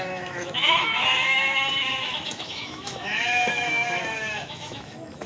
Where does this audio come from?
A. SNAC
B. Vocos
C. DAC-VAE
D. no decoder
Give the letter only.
C